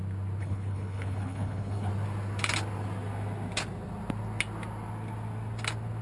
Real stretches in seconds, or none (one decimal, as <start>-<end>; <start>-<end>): 0.0-0.4; 1.9-6.0

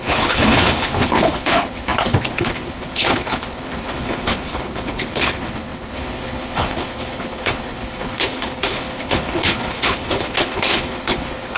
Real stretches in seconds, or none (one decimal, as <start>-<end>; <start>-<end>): none

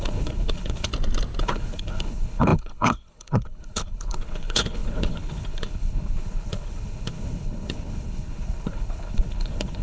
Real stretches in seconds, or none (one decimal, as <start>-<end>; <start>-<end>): 0.9-1.4

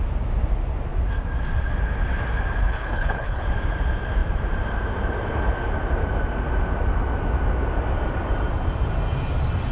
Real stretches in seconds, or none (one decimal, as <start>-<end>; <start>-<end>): 0.0-2.6; 3.4-9.7

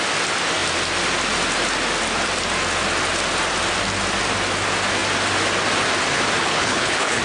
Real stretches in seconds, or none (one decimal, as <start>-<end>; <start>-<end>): 0.0-6.4